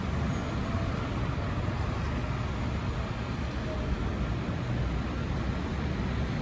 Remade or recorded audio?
recorded